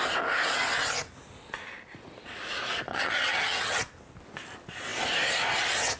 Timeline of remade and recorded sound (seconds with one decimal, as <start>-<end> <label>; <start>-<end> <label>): 0.0-2.9 recorded; 2.9-3.8 remade; 3.8-6.0 recorded